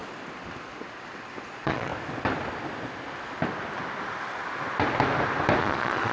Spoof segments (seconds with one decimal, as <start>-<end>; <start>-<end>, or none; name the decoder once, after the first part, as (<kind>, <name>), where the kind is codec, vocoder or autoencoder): 1.4-1.9 (vocoder, Vocos); 5.6-6.1